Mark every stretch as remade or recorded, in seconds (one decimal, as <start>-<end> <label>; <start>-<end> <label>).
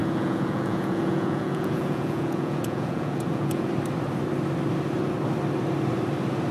0.0-3.7 remade; 3.7-6.5 recorded